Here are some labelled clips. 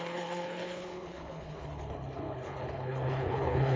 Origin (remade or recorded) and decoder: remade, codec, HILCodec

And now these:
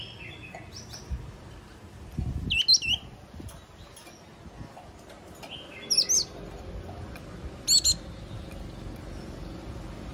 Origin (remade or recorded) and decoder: recorded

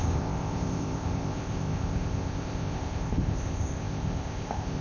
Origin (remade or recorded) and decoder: remade, codec, ZipCodec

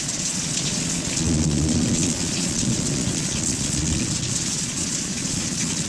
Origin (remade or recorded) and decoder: remade, vocoder, Vocos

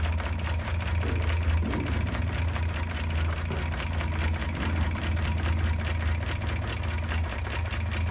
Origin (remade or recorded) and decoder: recorded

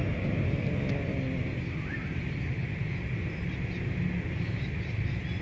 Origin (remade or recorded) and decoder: recorded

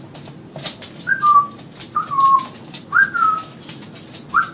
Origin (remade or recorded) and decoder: recorded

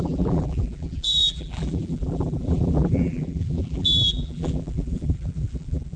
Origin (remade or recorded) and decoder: remade, vocoder, BigVGAN v2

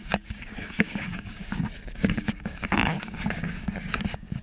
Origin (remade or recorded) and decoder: remade, codec, DAC